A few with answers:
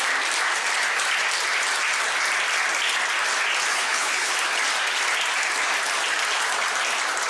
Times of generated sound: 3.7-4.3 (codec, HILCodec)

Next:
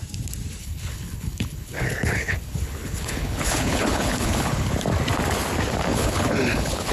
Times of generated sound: 0.6-4.7 (codec, HILCodec); 5.9-6.9

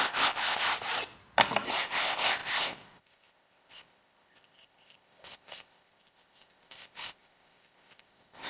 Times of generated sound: 0.0-0.7 (codec, ZipCodec); 1.8-8.5

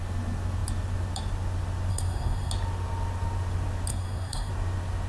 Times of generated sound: 1.9-2.5 (codec, SNAC); 3.9-4.5

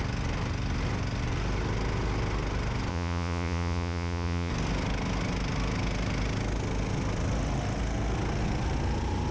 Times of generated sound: 2.9-4.5 (vocoder, Vocos)

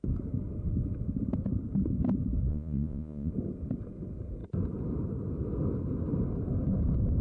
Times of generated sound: 2.5-3.3 (vocoder, Vocos)

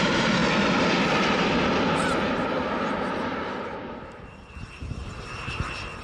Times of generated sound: 0.0-0.4 (vocoder, BigVGAN v2); 4.0-6.0

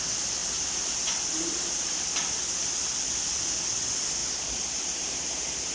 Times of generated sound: 0.4-2.8 (vocoder, BigVGAN v2); 4.2-5.7